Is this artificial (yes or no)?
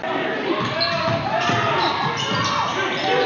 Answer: no